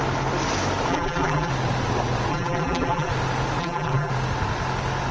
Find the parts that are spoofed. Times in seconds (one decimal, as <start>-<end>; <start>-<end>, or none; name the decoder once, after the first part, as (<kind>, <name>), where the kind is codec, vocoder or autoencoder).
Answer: 0.9-1.5 (vocoder, BigVGAN v2); 2.3-3.1; 3.6-4.1